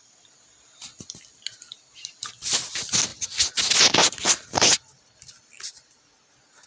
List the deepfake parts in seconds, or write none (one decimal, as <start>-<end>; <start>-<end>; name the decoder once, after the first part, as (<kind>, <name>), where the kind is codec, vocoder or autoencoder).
none